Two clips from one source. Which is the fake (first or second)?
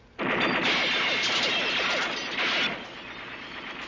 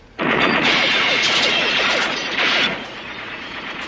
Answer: second